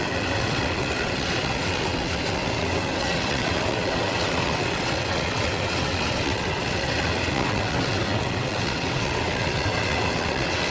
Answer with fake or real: fake